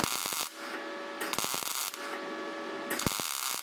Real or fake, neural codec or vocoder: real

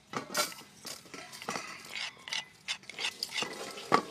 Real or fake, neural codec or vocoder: real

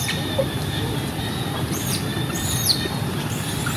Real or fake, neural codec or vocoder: fake, vocoder, BigVGAN v2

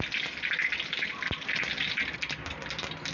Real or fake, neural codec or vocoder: fake, vocoder, BigVGAN v2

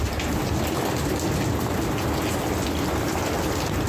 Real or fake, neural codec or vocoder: real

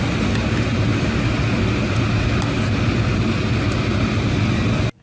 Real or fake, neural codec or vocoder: real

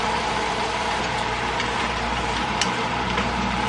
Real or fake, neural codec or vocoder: fake, vocoder, BigVGAN v2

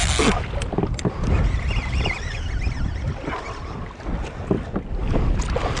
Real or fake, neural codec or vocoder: real